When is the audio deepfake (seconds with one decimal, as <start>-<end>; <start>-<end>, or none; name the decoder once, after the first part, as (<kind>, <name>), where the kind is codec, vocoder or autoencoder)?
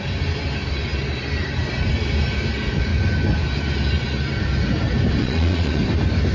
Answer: 5.2-5.8 (vocoder, Vocos)